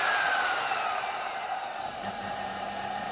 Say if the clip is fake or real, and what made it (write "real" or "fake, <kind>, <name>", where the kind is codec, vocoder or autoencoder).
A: fake, vocoder, BigVGAN v2